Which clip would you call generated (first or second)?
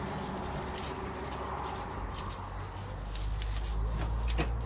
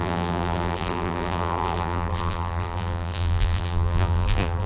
second